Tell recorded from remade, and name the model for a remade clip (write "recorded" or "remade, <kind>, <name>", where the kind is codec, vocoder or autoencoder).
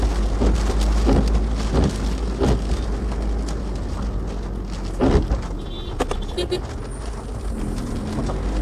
recorded